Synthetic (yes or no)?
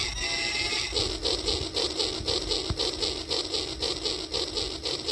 no